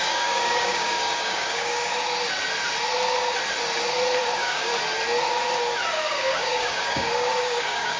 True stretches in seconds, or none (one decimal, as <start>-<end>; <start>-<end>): 1.9-4.2; 4.7-5.9